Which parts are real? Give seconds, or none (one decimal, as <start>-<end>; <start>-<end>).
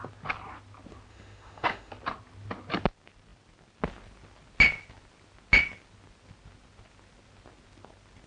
0.0-1.1; 1.9-8.3